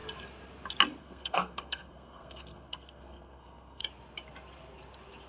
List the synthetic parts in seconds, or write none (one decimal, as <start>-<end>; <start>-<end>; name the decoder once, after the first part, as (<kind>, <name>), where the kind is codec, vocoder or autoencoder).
1.0-3.8 (codec, SNAC)